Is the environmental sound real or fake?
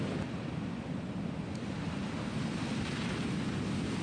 real